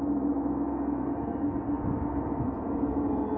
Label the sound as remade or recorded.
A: recorded